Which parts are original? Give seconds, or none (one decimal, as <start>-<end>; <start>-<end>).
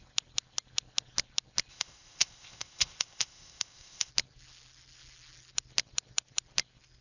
0.0-1.7; 4.1-7.0